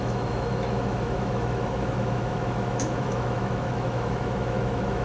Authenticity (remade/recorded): remade